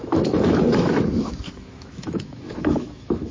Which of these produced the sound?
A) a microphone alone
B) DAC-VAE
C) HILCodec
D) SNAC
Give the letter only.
B